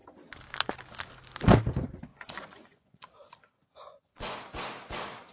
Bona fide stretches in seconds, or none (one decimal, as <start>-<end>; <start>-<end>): 0.0-2.1; 4.4-5.3